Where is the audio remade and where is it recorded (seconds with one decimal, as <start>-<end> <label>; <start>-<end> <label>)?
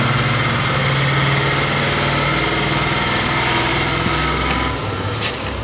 0.0-5.6 recorded